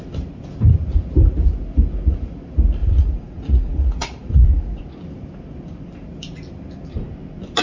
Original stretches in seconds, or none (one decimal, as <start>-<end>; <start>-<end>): 0.0-2.8; 4.8-7.6